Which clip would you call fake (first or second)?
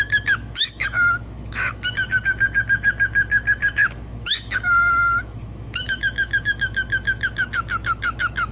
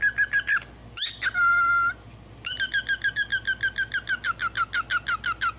first